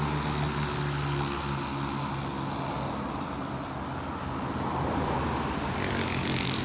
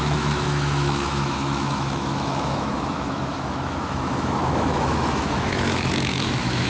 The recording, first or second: first